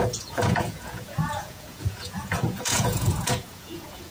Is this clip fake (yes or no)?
yes